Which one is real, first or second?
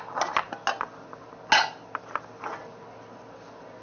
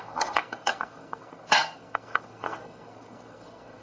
first